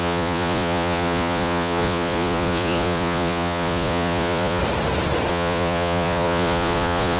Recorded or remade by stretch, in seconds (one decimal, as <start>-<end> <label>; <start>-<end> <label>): 0.0-4.6 remade; 4.6-5.3 recorded; 5.3-7.2 remade